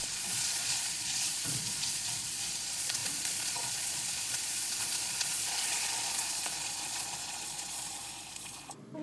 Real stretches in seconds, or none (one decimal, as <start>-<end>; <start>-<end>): none